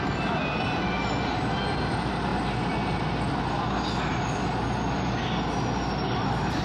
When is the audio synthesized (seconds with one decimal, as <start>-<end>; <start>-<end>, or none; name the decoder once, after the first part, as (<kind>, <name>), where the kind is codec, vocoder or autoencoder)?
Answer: none